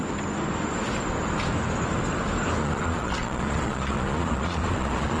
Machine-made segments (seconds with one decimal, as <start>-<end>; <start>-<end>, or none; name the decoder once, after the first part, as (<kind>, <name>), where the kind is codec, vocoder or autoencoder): 2.6-5.2 (vocoder, Vocos)